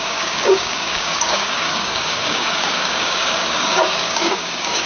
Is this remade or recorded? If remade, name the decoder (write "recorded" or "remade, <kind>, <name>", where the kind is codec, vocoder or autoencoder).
remade, codec, DAC